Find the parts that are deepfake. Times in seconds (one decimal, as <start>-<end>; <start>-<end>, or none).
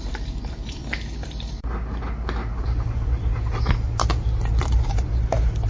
0.0-0.8; 2.5-3.3; 4.6-5.7